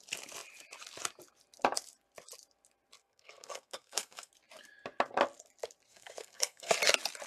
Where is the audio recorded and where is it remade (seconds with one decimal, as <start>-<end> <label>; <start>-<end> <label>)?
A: 0.0-3.0 recorded; 3.0-4.3 remade; 4.3-5.9 recorded; 5.9-6.7 remade; 6.7-7.3 recorded